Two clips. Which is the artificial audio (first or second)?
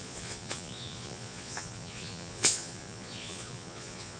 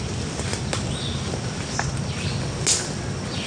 first